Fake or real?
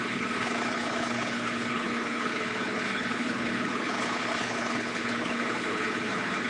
fake